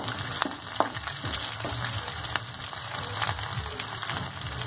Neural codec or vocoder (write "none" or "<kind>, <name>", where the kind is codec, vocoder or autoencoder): none